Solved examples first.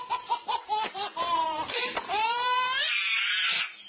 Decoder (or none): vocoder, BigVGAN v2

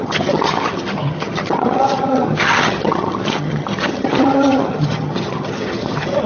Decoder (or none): vocoder, HiFi-GAN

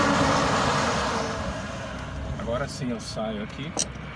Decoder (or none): none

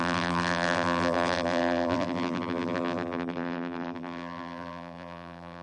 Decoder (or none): vocoder, BigVGAN v2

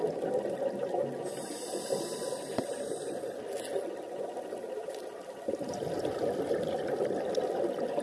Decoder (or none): none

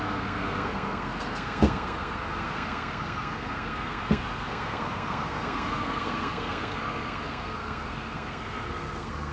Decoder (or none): codec, SNAC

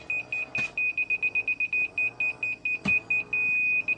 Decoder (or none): none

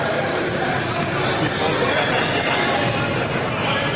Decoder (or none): none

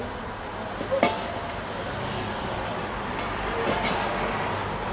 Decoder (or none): none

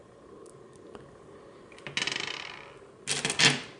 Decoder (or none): none